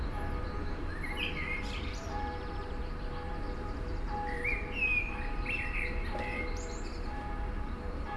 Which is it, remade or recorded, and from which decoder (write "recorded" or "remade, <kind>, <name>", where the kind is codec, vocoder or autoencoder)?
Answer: remade, vocoder, BigVGAN v2